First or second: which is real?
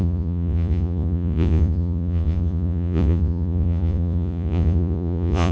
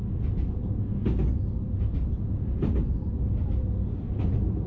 second